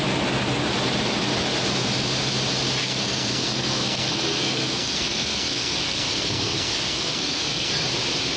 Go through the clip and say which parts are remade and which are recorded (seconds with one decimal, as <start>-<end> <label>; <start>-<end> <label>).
0.0-2.8 recorded; 2.8-7.7 remade; 7.7-8.4 recorded